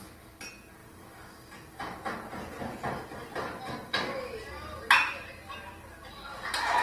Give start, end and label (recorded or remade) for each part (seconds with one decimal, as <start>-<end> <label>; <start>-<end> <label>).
0.0-6.8 recorded